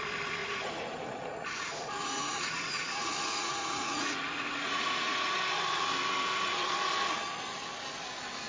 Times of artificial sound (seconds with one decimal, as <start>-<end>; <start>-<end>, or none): 0.4-5.4